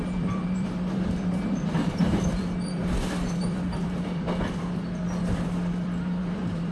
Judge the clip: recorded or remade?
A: remade